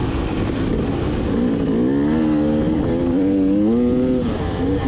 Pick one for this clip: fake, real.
real